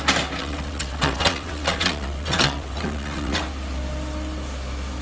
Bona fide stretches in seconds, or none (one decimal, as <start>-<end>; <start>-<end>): 0.0-0.4; 3.4-5.0

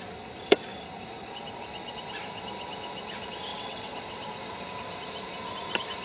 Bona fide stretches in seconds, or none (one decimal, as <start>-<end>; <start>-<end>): 0.0-3.5; 4.5-6.0

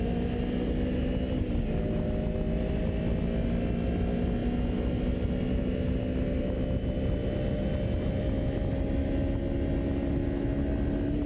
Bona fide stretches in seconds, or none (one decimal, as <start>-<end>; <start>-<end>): 0.0-11.3